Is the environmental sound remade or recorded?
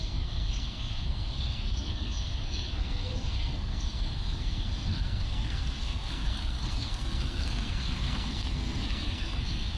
remade